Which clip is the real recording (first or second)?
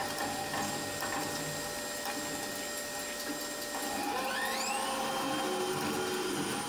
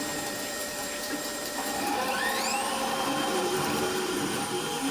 first